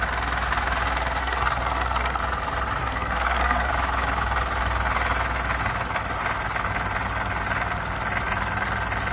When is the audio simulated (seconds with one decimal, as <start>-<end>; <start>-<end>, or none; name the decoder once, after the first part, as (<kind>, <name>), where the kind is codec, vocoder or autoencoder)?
1.2-2.2 (codec, SNAC); 2.8-3.7